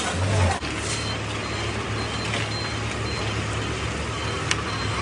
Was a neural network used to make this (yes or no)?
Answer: no